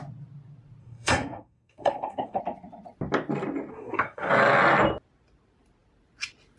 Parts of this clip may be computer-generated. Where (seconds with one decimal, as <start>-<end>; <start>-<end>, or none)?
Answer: 0.8-2.4; 3.7-4.3